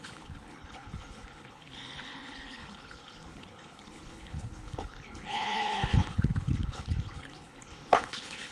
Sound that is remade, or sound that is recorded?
remade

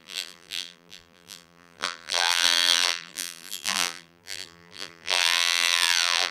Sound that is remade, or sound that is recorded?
remade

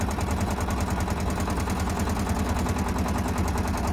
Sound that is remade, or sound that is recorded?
recorded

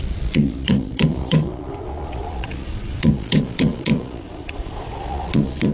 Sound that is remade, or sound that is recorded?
remade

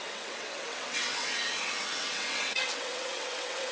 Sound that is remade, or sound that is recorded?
remade